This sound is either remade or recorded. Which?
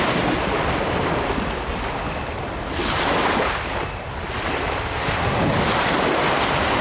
recorded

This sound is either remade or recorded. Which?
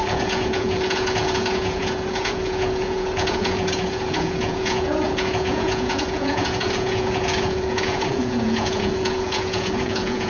remade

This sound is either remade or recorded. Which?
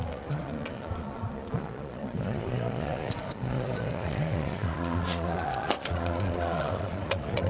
remade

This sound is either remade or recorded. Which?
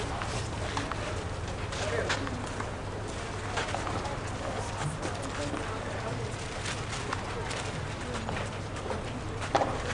recorded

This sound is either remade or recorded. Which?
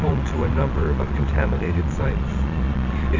remade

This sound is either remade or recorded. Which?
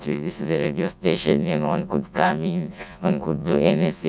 remade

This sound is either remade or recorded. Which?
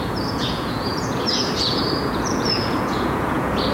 remade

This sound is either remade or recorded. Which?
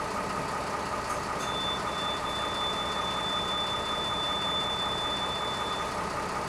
recorded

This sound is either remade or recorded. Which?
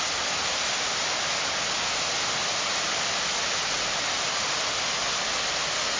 recorded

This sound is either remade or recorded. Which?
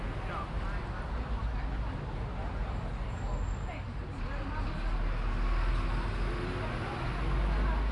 recorded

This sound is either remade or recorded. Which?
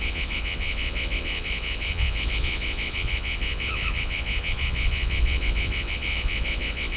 remade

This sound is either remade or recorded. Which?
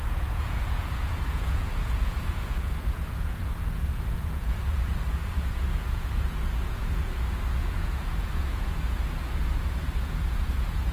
remade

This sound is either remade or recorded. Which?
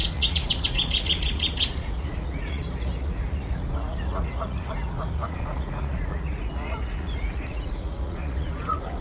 remade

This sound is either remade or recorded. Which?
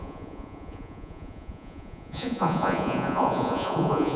remade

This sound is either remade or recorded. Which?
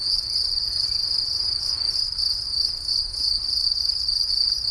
remade